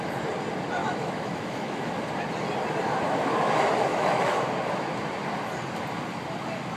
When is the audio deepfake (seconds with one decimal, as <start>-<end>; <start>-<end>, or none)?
0.8-2.1; 3.9-4.4